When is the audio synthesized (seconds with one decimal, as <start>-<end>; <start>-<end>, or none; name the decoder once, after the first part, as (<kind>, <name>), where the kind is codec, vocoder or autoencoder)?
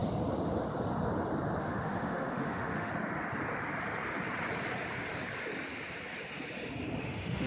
1.6-2.9 (autoencoder, DAC-VAE); 7.0-7.5